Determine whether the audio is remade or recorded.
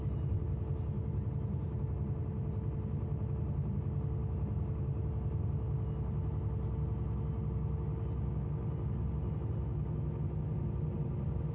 recorded